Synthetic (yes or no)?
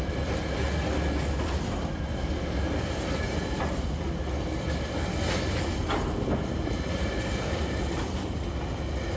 no